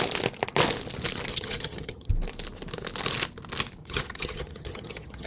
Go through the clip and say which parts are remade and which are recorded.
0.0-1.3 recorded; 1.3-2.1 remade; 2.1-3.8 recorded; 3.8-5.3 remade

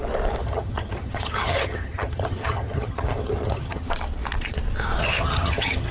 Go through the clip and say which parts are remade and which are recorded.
0.0-0.4 recorded; 0.4-3.9 remade; 3.9-5.0 recorded; 5.0-5.9 remade

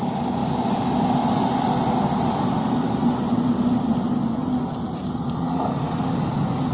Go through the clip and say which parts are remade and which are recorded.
0.0-6.7 recorded

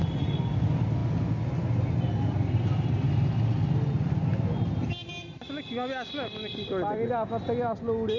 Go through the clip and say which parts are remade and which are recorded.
0.0-8.2 recorded

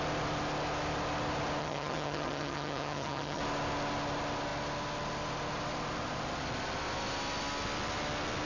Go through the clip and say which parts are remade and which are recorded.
0.0-1.6 recorded; 1.6-3.4 remade; 3.4-8.5 recorded

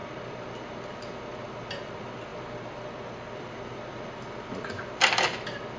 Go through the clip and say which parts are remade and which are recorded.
0.0-5.8 recorded

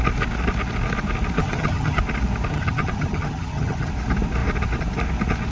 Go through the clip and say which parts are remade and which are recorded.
0.0-1.4 recorded; 1.4-2.0 remade; 2.0-2.5 recorded; 2.5-3.9 remade; 3.9-5.5 recorded